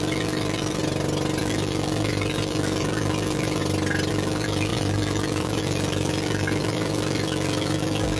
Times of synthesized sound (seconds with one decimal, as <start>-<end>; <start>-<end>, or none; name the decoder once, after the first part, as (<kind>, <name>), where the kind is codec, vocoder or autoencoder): 0.0-0.8 (vocoder, BigVGAN v2); 1.4-3.6; 4.1-8.2